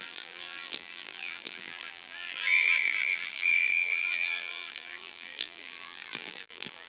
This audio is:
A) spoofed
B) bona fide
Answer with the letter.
A